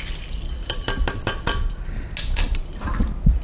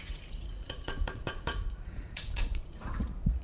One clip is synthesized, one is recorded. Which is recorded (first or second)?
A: first